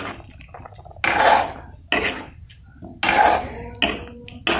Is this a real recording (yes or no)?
yes